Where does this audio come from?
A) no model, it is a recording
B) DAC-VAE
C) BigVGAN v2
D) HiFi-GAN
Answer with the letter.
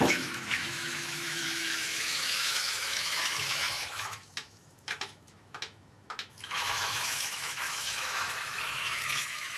B